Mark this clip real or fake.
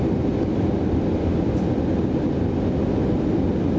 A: real